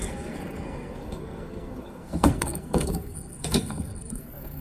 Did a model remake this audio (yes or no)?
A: yes